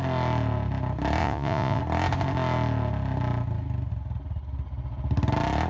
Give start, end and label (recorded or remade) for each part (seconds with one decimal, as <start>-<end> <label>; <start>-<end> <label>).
0.0-1.2 recorded; 1.2-1.8 remade; 1.8-5.7 recorded